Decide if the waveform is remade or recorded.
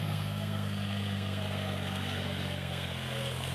remade